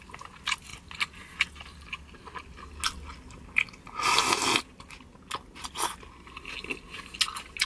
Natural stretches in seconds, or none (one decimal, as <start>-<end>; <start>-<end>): 0.0-7.7